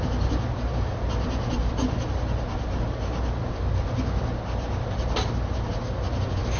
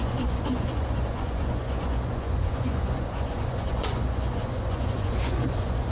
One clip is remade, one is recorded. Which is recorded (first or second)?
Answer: first